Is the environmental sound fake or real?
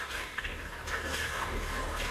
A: fake